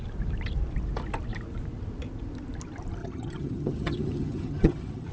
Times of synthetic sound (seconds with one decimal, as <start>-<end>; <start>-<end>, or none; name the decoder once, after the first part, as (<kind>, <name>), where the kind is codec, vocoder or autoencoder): 3.0-5.1 (vocoder, HiFi-GAN)